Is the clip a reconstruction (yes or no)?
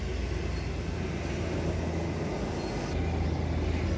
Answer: no